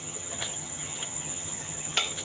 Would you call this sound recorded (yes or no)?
no